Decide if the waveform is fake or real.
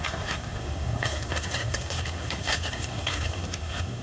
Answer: fake